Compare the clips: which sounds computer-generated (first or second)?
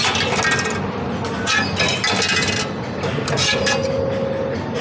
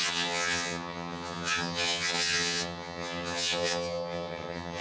second